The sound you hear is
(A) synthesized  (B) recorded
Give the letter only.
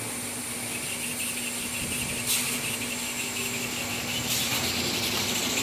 B